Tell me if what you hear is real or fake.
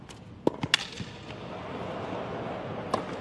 real